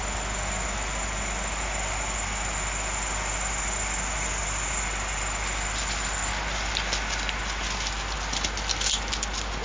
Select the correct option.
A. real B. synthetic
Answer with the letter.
A